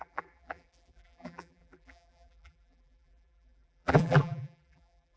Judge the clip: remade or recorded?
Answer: remade